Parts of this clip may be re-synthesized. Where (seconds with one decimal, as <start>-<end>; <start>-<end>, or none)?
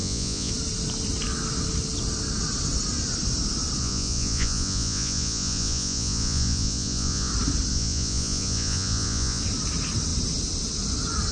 0.0-0.5; 3.8-7.3; 7.7-9.4